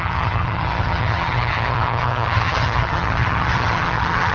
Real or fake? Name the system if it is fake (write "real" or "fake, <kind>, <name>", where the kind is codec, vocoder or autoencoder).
fake, vocoder, HiFi-GAN